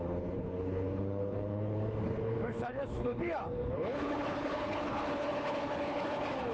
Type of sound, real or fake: fake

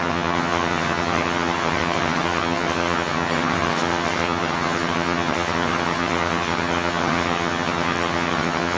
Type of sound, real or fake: fake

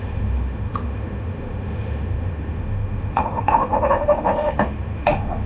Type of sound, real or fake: fake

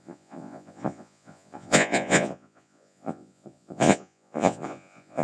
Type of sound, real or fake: fake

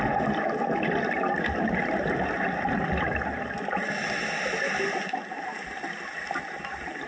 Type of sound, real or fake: real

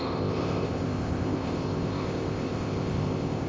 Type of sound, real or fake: fake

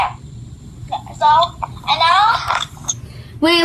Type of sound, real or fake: real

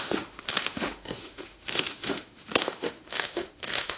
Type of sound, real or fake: fake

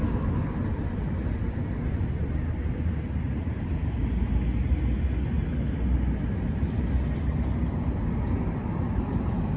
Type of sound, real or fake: real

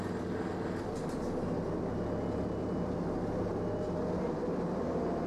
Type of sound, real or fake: real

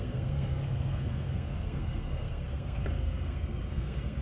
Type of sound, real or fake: fake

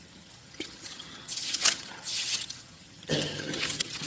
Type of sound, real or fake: fake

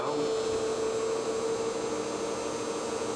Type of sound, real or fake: real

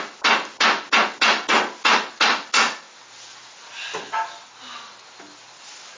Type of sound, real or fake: real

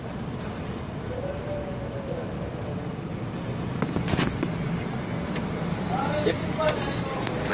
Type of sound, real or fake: real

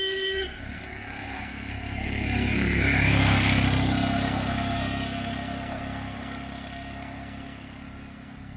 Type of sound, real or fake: fake